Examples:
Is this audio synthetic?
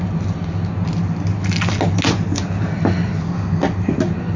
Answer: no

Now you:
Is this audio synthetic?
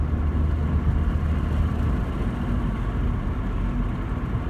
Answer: no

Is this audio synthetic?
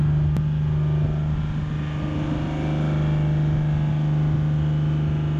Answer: no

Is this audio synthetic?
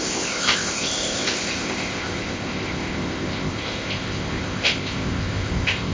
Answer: yes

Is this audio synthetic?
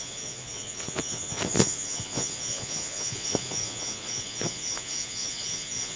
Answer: yes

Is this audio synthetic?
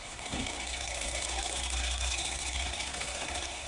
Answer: yes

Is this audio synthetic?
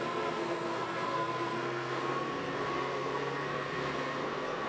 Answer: yes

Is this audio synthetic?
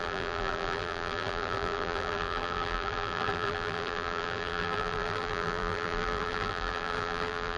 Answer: yes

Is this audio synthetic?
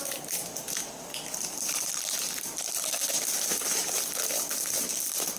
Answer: no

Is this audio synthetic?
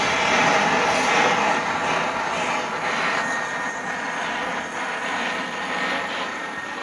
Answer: no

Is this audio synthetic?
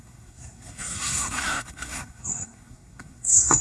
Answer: yes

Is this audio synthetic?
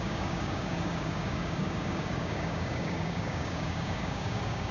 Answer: yes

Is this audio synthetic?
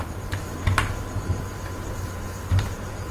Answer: yes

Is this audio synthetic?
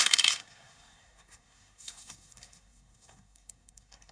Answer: yes